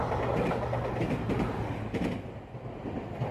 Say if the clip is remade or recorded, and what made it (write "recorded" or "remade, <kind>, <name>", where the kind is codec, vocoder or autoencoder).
recorded